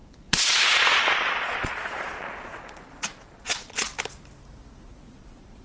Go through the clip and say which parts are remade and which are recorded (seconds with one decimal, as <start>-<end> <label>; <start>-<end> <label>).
0.0-3.9 remade; 3.9-4.7 recorded; 4.7-5.6 remade